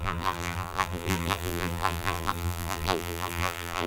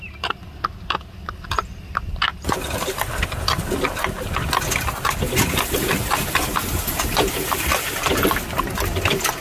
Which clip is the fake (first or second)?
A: first